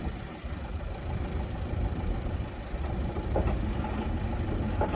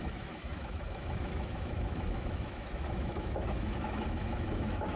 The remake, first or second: second